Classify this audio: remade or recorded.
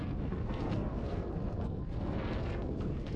remade